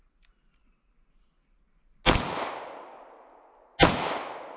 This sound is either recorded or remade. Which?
recorded